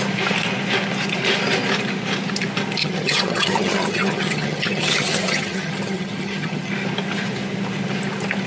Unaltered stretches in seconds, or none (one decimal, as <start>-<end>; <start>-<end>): 0.0-2.8; 6.7-8.5